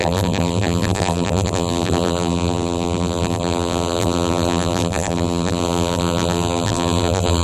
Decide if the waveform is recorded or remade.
remade